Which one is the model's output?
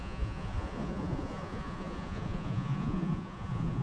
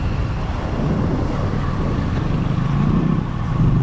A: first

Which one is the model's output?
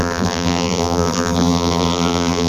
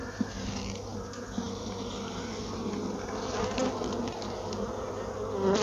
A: first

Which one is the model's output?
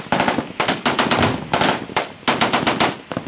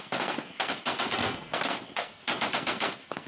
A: second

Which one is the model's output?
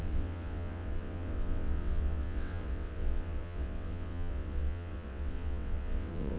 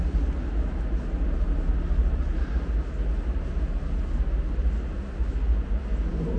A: first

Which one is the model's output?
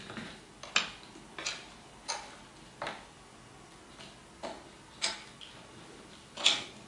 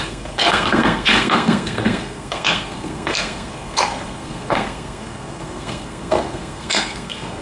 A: second